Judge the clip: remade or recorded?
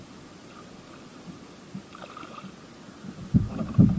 recorded